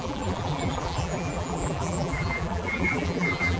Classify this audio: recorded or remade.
remade